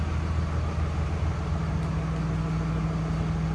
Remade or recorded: recorded